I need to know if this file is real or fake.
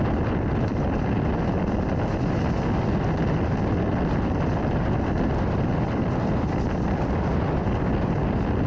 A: real